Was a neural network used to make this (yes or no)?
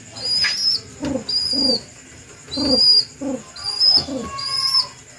no